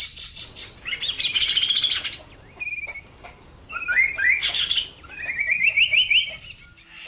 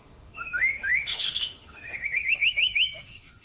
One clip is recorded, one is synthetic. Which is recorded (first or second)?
first